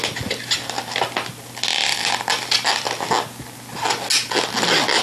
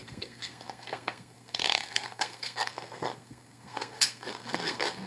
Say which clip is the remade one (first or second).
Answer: second